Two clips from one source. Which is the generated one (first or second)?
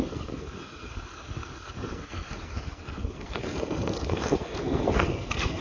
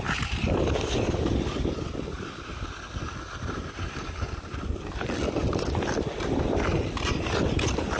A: first